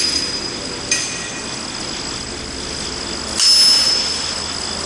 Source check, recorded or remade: recorded